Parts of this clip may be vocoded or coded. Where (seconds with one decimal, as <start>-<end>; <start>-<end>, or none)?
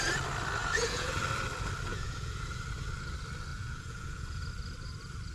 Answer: 0.6-1.1; 1.9-2.6; 3.5-4.4